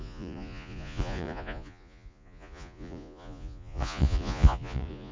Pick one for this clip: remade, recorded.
remade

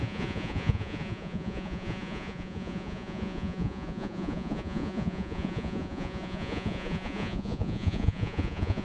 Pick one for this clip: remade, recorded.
remade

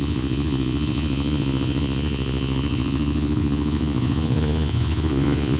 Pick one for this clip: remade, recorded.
remade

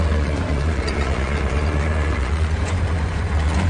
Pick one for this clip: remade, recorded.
remade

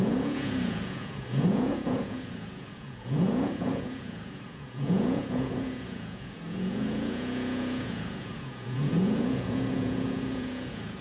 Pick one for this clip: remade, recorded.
remade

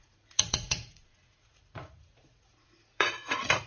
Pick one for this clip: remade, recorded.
remade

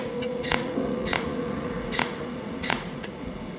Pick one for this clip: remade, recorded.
remade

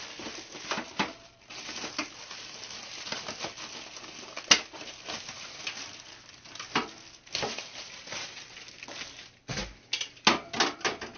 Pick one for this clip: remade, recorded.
recorded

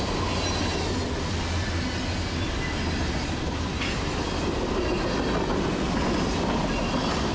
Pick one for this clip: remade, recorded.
recorded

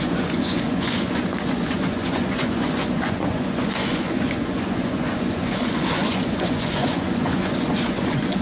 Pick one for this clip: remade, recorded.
remade